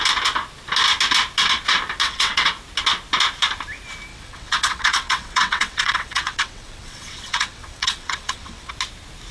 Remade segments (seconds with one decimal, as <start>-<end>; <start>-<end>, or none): 2.0-2.5; 4.1-8.7